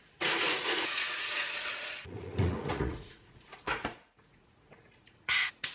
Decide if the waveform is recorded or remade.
remade